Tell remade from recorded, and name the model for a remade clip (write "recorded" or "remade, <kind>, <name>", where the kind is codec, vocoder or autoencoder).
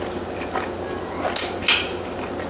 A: recorded